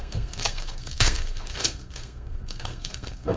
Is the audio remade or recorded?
remade